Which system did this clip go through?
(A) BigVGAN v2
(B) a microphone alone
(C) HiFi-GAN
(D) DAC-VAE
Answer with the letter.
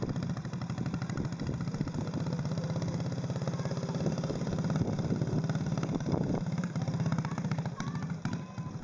A